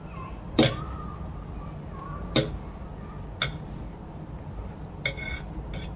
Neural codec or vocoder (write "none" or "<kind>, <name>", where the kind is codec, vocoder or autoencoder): none